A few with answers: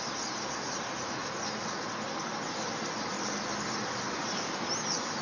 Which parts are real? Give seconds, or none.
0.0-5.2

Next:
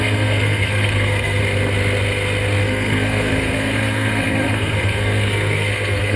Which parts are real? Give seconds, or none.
1.4-2.6

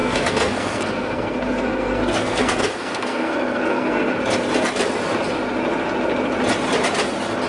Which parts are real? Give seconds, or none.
4.2-7.5

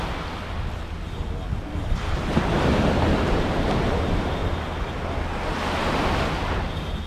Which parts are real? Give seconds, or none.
0.0-7.1